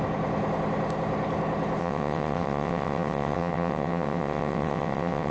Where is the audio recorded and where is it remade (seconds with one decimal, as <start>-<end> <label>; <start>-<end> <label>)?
0.0-1.8 recorded; 1.8-5.3 remade